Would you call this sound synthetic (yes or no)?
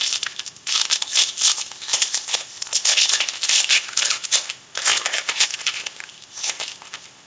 yes